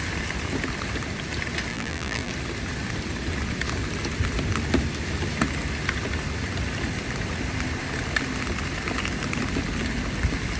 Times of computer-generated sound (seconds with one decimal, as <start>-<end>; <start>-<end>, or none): 1.7-2.3